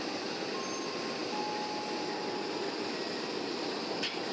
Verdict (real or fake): real